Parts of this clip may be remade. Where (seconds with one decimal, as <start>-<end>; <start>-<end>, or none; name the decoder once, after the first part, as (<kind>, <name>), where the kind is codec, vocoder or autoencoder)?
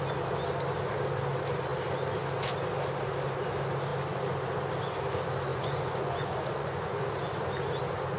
5.5-7.1 (vocoder, Vocos)